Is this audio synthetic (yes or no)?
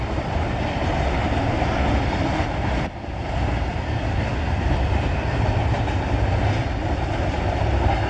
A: no